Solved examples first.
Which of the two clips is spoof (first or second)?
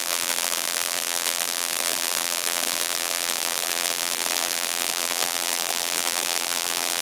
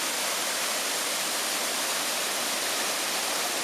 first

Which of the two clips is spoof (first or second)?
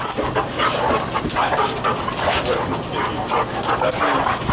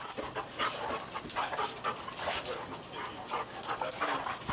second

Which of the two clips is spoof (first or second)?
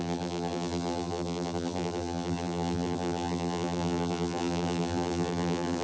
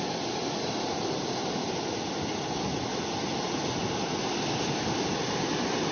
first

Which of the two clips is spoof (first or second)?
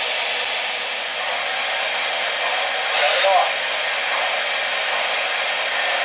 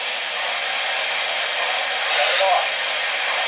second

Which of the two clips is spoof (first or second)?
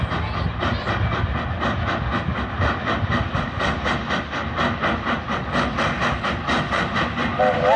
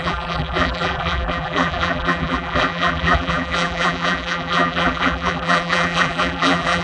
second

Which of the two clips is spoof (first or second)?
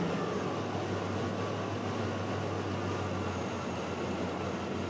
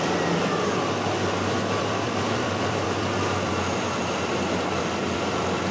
second